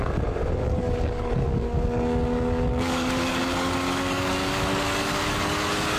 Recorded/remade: remade